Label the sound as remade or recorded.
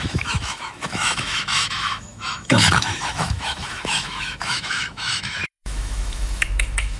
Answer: remade